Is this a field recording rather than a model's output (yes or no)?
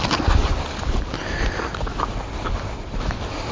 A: yes